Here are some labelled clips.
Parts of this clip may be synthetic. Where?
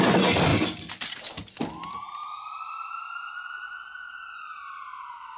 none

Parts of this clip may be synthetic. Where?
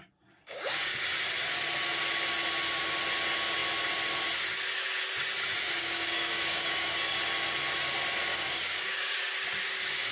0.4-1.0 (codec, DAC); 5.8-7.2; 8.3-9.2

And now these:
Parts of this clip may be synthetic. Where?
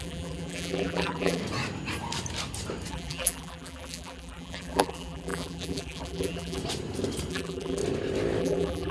0.0-1.4 (vocoder, BigVGAN v2); 2.9-6.6; 7.3-7.8; 8.4-8.9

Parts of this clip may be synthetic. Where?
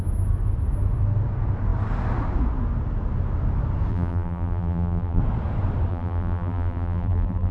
3.9-5.2 (vocoder, BigVGAN v2); 5.9-7.5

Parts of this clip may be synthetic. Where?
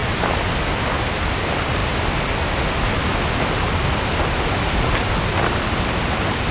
0.0-0.5 (vocoder, BigVGAN v2)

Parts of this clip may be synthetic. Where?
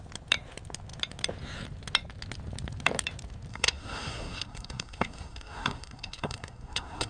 3.5-7.1 (codec, SNAC)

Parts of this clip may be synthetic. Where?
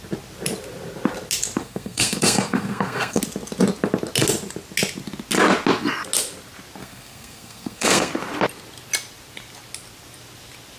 1.6-3.2 (codec, SNAC); 6.8-8.1